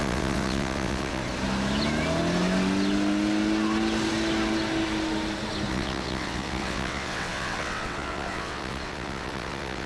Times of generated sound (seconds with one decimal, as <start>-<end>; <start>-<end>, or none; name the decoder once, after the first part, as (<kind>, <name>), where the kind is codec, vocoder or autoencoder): 0.0-1.2 (vocoder, WaveNeXt); 5.7-9.9